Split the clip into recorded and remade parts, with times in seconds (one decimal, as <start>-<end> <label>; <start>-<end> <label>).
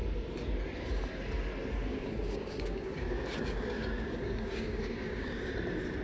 0.0-1.9 recorded; 1.9-5.5 remade; 5.5-6.0 recorded